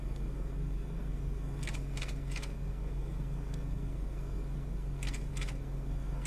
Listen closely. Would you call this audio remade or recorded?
remade